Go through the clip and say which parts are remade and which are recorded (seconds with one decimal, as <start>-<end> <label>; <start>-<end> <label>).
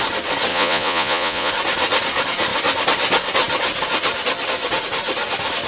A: 0.0-0.5 recorded; 0.5-1.5 remade; 1.5-5.7 recorded